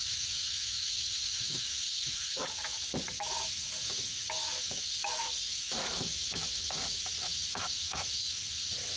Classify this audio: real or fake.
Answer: fake